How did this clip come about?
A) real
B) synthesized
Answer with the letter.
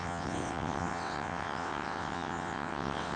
B